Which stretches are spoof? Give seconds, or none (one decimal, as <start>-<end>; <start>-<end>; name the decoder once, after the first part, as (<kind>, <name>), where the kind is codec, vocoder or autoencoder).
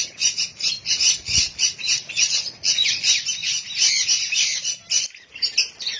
none